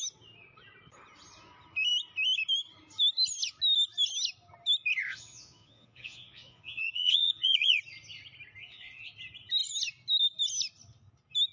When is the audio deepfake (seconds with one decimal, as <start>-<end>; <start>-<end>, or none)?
5.1-7.8; 8.6-9.1